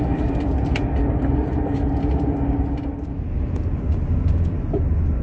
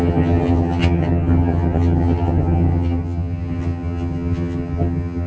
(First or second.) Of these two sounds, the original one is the first